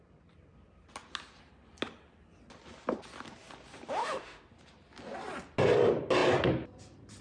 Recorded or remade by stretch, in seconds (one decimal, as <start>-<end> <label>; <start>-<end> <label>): 0.0-4.0 recorded; 4.0-4.5 remade; 4.5-7.2 recorded